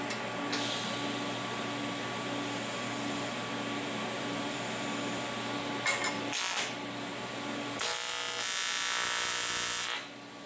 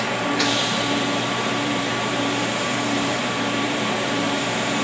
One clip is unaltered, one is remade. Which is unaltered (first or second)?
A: first